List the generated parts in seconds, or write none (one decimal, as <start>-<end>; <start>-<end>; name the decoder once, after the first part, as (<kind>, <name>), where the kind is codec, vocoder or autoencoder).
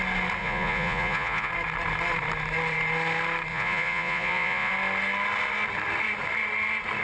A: 0.4-1.5 (vocoder, Vocos); 3.5-4.7